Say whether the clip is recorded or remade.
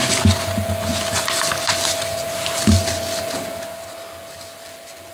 recorded